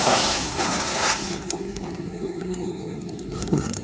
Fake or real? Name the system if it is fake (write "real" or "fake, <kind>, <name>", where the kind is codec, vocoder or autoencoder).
fake, codec, SNAC